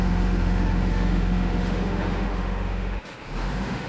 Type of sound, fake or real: fake